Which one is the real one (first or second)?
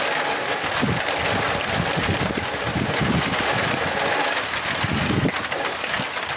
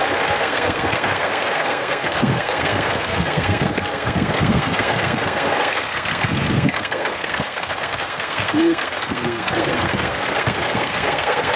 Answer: first